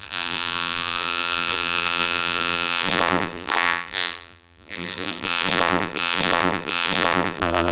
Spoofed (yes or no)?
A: yes